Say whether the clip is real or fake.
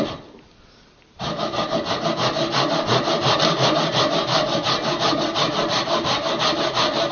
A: fake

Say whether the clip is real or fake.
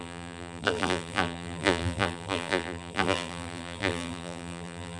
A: fake